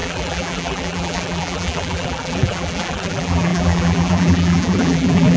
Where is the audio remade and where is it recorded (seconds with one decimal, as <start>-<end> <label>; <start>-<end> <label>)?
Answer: 0.0-5.4 remade